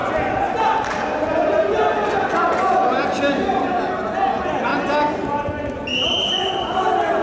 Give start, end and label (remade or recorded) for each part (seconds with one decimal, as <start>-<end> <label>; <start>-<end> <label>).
0.0-7.2 recorded